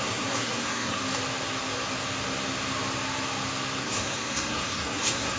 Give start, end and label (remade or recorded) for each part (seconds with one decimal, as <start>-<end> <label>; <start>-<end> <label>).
0.0-1.0 remade; 1.0-3.8 recorded; 3.8-5.4 remade